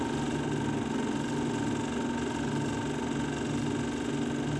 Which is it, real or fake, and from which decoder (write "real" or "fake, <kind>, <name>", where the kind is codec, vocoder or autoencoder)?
real